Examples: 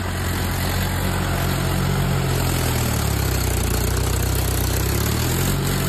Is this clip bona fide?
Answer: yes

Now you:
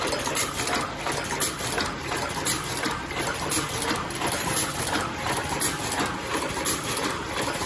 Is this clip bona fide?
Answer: yes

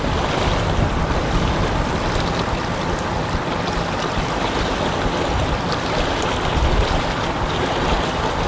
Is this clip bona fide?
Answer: yes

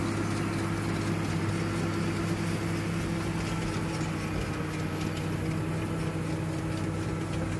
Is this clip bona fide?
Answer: yes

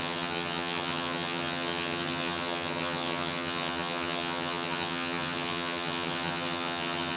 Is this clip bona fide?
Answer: no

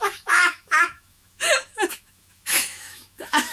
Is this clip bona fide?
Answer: no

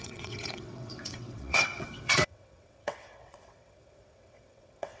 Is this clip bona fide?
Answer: no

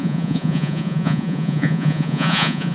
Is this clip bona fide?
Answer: no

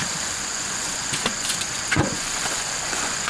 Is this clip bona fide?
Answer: no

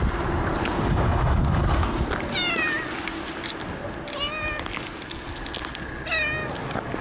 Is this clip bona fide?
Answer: yes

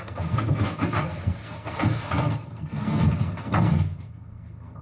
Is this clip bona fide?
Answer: no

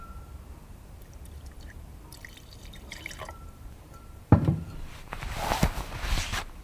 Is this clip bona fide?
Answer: no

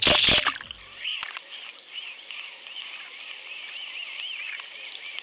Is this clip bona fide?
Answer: yes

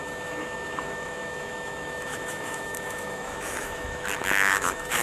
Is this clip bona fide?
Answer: no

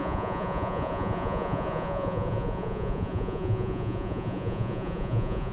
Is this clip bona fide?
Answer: no